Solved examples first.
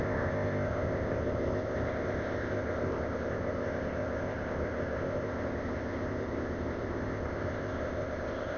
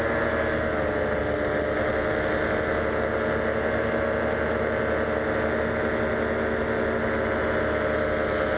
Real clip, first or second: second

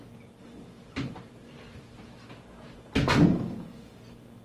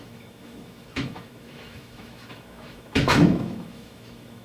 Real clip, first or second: first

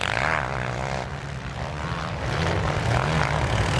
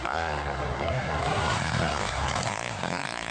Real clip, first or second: first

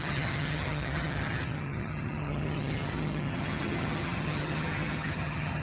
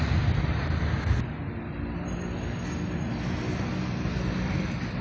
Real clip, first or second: second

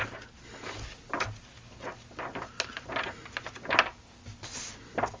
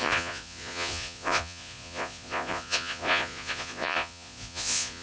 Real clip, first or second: first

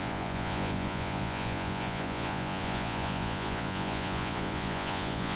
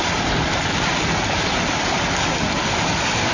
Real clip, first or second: second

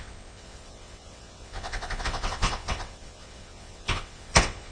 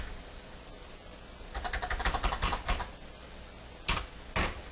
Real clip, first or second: second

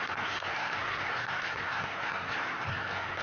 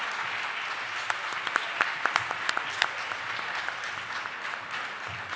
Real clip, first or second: second